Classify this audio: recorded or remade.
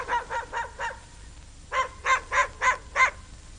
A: recorded